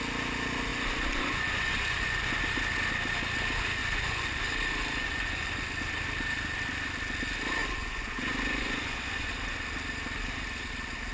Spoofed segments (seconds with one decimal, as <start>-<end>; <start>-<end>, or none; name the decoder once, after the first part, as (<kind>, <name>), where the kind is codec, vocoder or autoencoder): 0.7-2.4 (vocoder, Vocos); 3.8-4.4; 5.0-5.5; 7.6-9.3